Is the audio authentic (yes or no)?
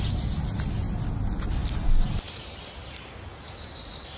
yes